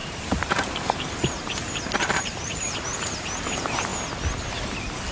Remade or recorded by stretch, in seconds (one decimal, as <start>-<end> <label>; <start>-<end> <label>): 0.0-3.1 remade; 3.1-5.1 recorded